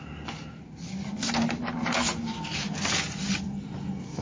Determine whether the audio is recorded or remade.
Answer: recorded